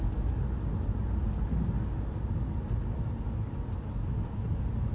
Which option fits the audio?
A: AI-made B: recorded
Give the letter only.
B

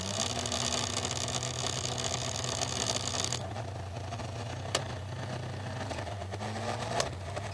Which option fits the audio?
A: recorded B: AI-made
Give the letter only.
A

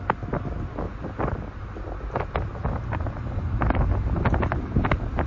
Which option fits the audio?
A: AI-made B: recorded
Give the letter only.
B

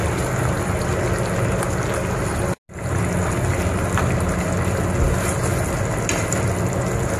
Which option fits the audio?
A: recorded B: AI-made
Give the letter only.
A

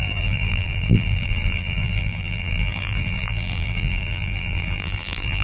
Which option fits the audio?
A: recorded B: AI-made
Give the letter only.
B